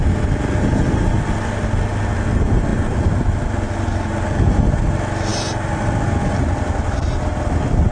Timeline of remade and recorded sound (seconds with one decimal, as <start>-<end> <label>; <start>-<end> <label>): 0.0-7.9 recorded